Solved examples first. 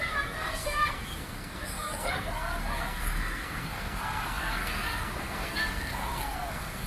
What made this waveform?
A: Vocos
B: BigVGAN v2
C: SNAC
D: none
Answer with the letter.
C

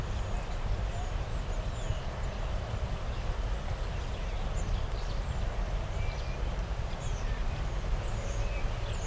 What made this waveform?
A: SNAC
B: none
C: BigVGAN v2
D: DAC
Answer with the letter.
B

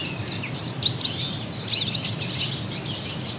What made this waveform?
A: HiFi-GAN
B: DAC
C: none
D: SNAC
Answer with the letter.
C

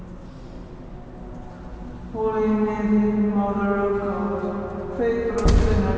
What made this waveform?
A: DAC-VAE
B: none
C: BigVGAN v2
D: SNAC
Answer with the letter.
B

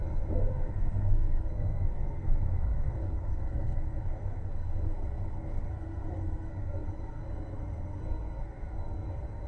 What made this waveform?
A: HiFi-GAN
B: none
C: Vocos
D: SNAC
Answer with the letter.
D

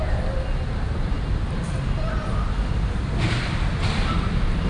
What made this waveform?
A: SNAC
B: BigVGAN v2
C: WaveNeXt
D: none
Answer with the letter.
D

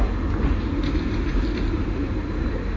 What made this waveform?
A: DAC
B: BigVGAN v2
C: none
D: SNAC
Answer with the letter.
C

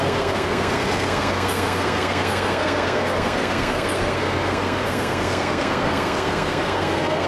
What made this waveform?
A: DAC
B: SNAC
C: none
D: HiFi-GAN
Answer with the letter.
B